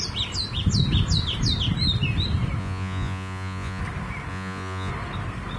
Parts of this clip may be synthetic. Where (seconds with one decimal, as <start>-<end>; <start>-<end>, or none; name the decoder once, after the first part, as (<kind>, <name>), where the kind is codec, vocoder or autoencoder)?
2.6-3.8 (vocoder, Vocos); 4.3-4.9